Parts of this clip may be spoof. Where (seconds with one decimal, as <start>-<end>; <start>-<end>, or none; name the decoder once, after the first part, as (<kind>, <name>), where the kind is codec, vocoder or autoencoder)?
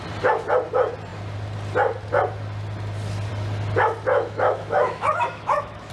4.1-5.9 (autoencoder, DAC-VAE)